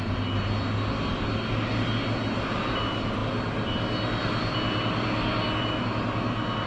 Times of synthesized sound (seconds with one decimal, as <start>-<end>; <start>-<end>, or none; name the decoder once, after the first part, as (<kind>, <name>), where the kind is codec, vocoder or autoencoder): none